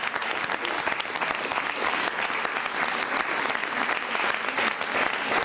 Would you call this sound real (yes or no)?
yes